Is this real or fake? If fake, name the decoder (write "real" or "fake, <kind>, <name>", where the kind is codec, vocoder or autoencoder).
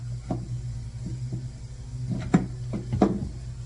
real